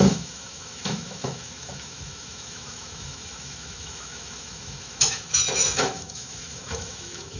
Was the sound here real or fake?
fake